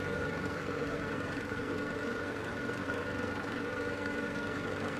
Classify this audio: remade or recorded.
remade